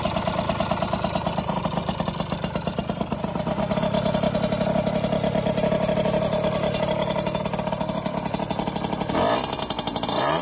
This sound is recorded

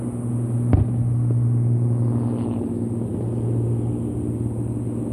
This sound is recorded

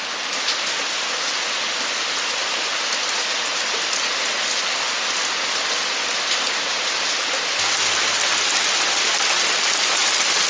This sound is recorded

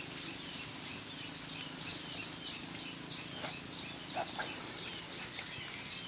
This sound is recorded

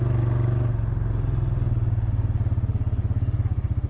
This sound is recorded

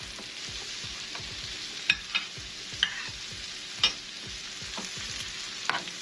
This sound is recorded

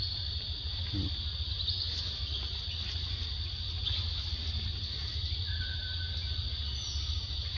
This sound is recorded